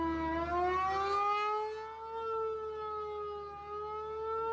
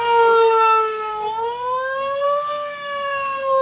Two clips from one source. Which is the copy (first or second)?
second